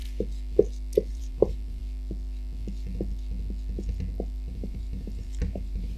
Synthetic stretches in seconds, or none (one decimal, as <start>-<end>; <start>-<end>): 1.1-1.8; 4.5-6.0